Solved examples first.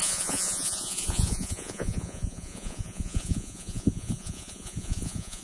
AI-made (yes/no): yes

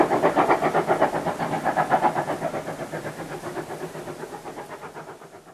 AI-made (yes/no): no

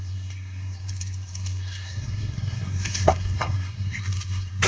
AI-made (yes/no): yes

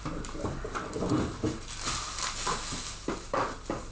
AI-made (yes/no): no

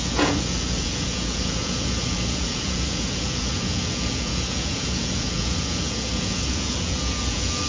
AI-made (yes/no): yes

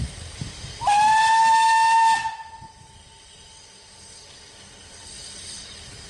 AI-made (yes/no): no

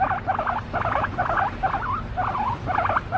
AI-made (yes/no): no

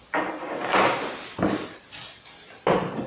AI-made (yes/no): no